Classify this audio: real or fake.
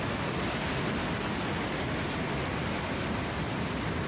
real